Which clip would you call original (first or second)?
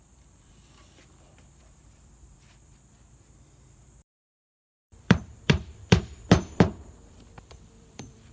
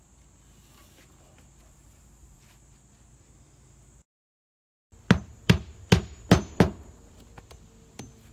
second